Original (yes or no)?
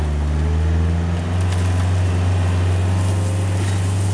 yes